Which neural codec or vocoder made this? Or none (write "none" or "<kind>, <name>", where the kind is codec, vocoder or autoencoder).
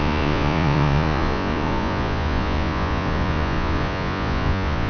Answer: vocoder, Vocos